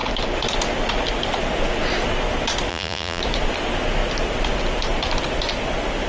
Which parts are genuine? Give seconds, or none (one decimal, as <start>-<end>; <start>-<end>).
0.0-2.7; 3.2-6.1